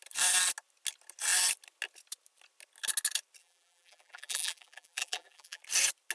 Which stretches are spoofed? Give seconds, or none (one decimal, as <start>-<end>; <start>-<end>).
3.4-5.6